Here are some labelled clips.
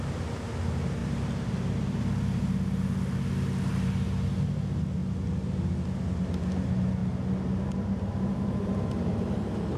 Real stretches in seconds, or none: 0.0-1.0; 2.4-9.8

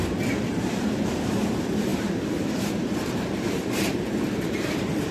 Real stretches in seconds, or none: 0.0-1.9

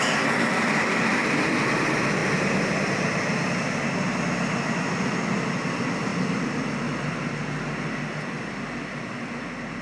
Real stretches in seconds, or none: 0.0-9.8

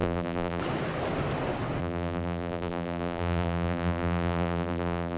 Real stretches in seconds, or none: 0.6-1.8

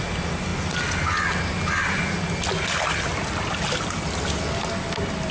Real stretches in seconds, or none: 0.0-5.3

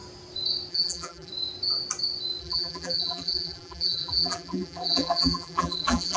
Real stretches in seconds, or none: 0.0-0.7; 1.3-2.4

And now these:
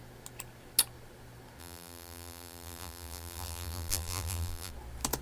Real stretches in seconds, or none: 0.0-1.6; 4.7-5.2